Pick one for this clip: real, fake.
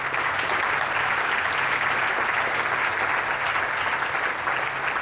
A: real